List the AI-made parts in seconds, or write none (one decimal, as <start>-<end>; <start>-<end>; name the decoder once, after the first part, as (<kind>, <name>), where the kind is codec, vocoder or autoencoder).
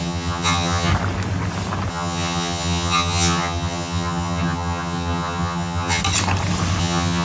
0.0-0.9 (vocoder, HiFi-GAN); 1.9-6.0; 6.8-7.2